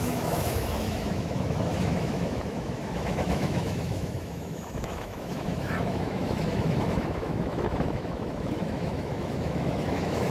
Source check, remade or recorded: remade